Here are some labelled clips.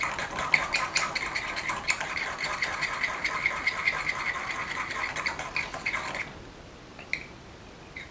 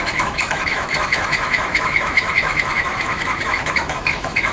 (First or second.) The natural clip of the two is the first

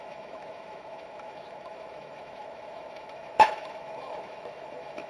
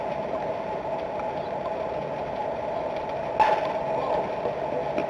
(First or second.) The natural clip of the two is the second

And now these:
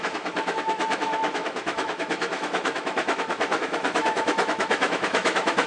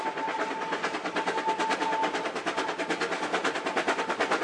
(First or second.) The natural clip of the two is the second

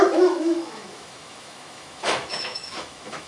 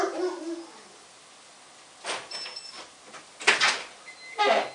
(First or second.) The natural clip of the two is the second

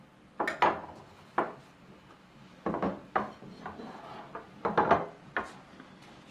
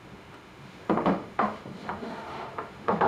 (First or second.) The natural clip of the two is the first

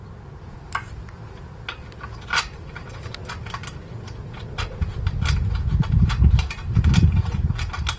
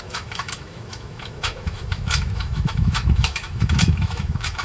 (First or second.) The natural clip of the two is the first